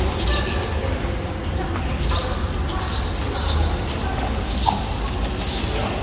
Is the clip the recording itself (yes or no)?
yes